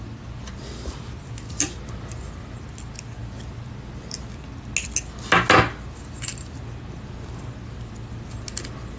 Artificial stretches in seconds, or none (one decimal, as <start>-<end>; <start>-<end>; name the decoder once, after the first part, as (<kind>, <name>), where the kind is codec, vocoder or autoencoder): none